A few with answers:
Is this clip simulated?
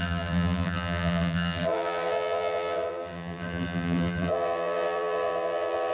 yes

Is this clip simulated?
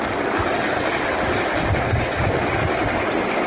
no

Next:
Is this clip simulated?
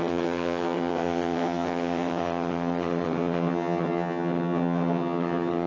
yes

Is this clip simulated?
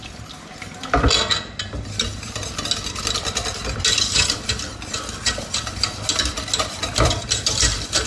no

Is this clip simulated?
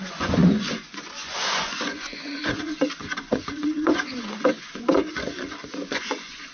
yes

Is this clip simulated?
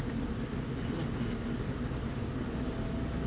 no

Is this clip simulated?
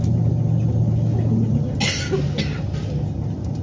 no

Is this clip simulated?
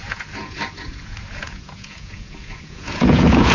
yes